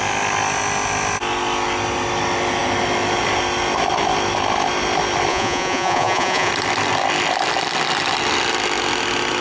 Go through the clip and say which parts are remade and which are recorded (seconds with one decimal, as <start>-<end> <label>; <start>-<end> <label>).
0.0-5.3 recorded; 5.3-6.5 remade; 6.5-9.4 recorded